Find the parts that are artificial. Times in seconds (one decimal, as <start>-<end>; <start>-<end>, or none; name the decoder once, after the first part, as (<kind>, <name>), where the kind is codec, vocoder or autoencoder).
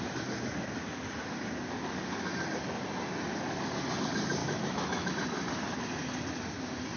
4.4-5.1 (autoencoder, DAC-VAE)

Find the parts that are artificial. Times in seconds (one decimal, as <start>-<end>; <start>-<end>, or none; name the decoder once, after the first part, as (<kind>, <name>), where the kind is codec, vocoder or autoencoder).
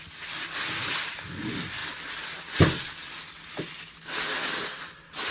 none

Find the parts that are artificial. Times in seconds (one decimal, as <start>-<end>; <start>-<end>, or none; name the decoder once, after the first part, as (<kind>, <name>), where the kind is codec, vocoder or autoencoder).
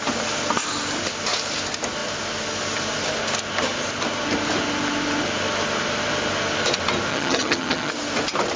7.1-7.9 (vocoder, HiFi-GAN)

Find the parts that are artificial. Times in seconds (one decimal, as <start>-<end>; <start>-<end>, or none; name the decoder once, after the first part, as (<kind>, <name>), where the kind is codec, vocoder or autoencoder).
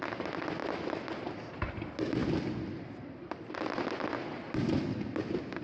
none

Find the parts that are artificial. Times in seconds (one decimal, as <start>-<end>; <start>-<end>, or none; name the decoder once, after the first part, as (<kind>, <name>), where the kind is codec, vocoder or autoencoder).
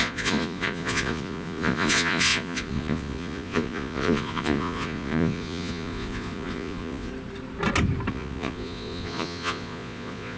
0.0-7.1 (vocoder, Vocos); 8.1-10.4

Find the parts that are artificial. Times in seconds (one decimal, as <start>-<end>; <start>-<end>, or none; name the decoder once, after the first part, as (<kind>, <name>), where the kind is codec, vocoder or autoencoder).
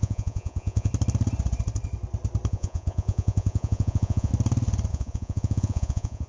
0.0-0.9 (vocoder, Vocos); 2.5-4.3; 4.9-6.3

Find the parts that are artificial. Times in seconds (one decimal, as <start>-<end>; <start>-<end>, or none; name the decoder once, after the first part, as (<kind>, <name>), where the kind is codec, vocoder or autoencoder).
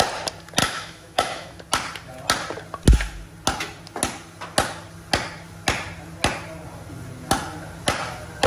0.6-1.6 (autoencoder, DAC-VAE)